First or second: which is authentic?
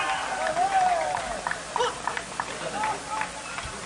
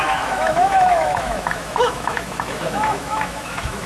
first